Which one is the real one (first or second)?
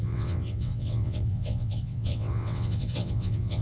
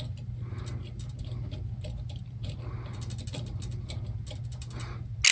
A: second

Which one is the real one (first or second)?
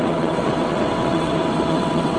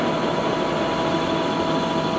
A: second